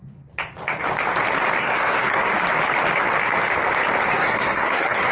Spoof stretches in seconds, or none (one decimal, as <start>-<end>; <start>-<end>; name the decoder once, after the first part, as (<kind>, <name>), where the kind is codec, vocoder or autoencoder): 1.6-2.3 (codec, SNAC); 4.1-5.1

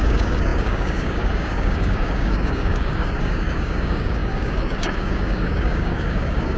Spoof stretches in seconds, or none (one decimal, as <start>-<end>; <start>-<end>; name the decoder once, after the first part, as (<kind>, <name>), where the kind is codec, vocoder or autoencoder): 0.0-6.6 (codec, DAC)

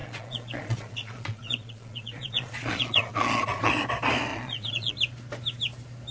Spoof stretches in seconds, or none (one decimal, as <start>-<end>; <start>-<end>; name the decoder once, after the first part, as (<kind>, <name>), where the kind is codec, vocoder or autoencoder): 0.0-3.7 (vocoder, Vocos); 4.3-4.9